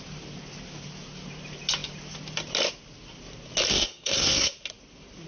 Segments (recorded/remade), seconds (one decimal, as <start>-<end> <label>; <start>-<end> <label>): 0.0-3.7 recorded; 3.7-4.5 remade; 4.5-5.3 recorded